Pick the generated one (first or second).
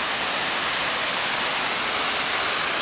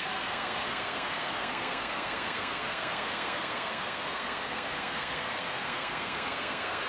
second